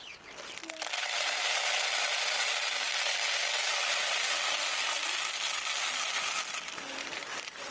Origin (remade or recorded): recorded